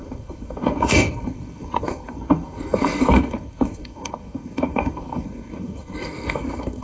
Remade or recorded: remade